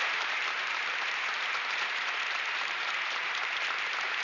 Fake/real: fake